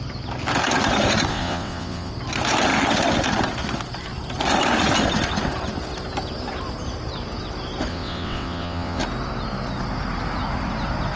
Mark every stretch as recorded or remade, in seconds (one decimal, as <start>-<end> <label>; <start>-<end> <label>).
0.0-1.3 recorded; 1.3-2.1 remade; 2.1-7.9 recorded; 7.9-9.0 remade; 9.0-11.2 recorded